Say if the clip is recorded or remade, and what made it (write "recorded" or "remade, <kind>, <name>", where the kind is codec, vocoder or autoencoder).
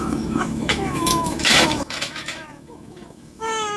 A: remade, autoencoder, DAC-VAE